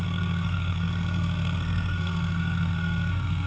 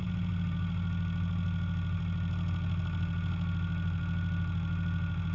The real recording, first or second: second